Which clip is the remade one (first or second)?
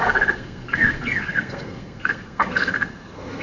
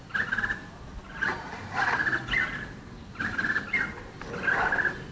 first